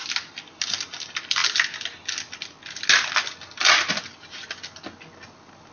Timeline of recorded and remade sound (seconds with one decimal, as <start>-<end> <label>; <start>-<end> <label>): 0.0-5.7 recorded